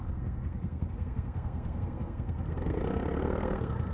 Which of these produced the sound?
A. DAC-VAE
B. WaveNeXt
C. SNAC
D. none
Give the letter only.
C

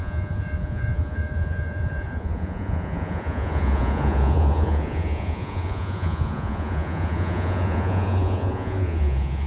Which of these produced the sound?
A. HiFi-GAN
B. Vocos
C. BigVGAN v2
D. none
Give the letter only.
B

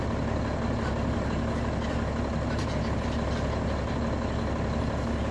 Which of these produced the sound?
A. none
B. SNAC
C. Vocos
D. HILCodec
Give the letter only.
A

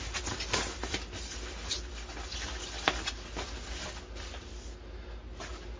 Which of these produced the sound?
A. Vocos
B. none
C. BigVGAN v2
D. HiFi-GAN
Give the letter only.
B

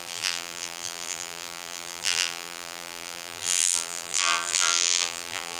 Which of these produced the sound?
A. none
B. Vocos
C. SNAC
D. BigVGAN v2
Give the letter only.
D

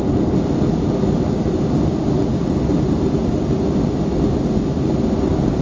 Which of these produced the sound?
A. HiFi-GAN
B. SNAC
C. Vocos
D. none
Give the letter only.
D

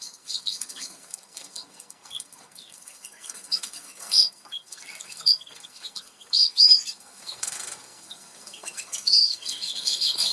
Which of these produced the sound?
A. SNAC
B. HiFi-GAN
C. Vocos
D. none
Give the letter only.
A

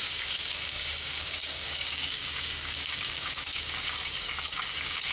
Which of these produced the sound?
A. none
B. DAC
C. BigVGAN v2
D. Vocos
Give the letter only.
B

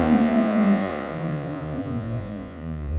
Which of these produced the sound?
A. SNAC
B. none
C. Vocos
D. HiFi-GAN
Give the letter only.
C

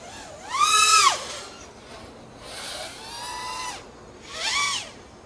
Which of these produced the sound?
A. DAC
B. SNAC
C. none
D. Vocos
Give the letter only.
C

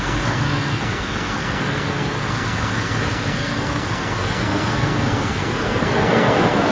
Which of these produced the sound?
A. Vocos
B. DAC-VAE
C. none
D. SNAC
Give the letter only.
D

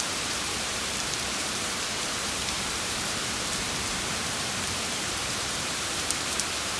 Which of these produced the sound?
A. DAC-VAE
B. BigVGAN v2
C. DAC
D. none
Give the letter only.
B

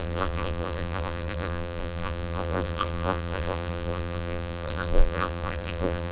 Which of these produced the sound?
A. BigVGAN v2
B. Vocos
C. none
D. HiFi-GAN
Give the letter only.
A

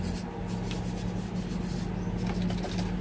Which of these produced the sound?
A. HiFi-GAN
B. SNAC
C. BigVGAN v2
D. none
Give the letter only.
D